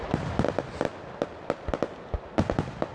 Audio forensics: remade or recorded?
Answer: recorded